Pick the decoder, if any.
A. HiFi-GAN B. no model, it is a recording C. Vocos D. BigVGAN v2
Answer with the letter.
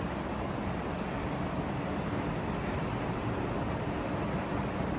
B